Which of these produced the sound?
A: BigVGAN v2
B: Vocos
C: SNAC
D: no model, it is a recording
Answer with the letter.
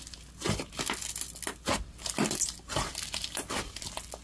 D